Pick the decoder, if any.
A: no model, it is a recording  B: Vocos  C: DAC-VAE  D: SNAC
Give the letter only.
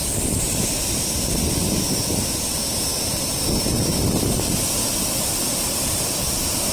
A